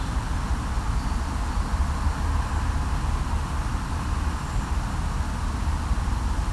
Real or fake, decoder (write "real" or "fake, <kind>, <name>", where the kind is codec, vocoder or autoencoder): real